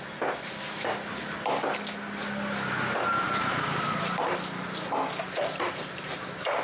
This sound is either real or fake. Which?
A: real